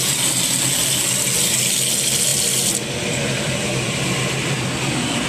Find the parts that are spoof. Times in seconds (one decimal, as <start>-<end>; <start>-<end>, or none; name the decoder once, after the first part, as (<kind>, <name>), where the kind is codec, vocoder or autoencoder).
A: 2.3-5.3 (vocoder, BigVGAN v2)